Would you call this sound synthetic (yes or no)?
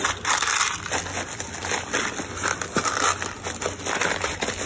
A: no